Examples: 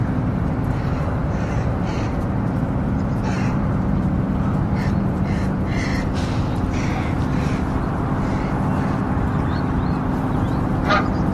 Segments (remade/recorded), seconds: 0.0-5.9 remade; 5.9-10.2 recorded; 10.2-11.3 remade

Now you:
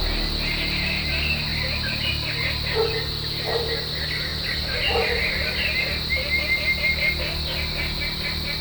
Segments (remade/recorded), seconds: 0.0-8.6 recorded

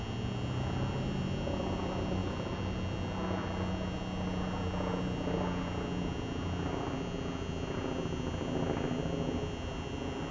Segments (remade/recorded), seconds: 0.0-10.3 recorded